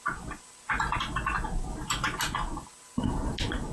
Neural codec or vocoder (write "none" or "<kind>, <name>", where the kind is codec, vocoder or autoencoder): none